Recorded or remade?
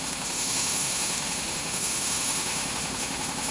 remade